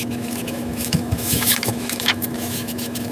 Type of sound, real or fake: fake